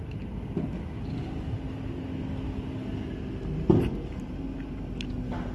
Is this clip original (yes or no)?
yes